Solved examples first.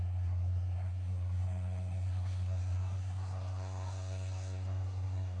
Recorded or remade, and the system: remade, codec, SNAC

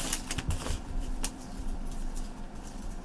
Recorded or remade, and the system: remade, vocoder, BigVGAN v2